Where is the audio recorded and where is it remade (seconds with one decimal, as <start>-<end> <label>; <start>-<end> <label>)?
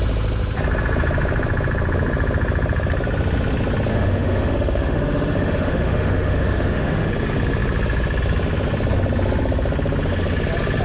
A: 0.0-3.9 recorded; 3.9-7.1 remade; 7.1-10.8 recorded